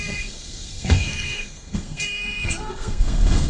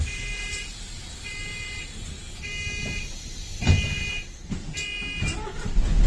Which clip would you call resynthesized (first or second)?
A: first